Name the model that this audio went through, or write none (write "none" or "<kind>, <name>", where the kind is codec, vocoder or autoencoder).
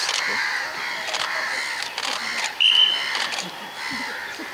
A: none